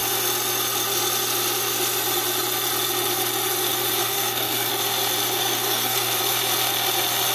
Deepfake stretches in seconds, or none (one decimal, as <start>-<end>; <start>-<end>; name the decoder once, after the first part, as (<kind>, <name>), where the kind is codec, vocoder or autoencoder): 4.0-4.7 (codec, SNAC); 5.4-6.2